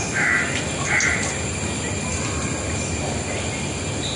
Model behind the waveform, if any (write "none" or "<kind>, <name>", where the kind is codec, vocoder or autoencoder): none